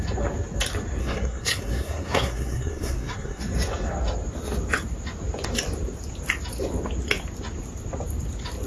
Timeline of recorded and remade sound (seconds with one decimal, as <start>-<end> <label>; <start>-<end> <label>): 0.0-1.0 recorded; 1.0-3.4 remade; 3.4-8.7 recorded